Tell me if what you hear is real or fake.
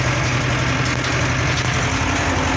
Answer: real